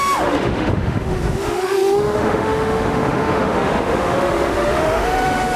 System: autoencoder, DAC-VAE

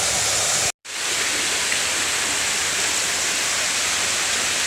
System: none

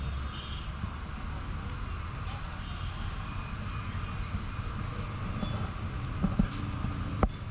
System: none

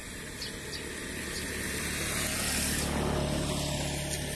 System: none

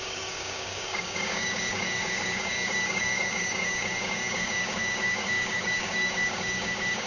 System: codec, DAC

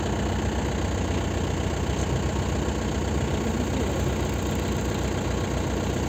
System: none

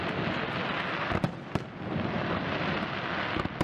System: none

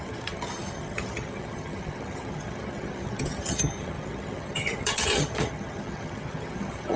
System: vocoder, HiFi-GAN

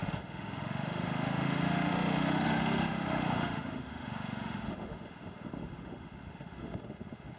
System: autoencoder, DAC-VAE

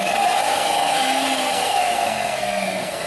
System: codec, SNAC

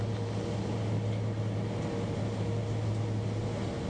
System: none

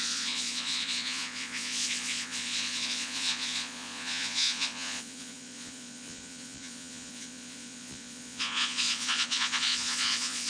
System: vocoder, Vocos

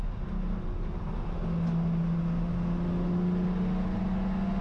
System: none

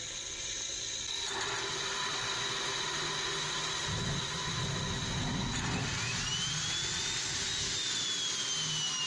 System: none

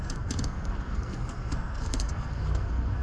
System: codec, SNAC